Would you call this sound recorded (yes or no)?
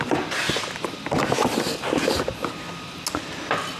yes